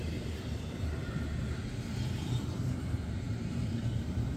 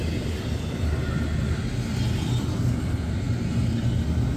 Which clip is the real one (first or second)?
second